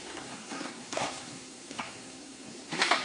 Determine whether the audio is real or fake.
fake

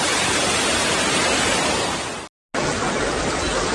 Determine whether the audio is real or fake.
real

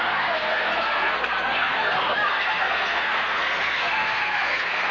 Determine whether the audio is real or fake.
fake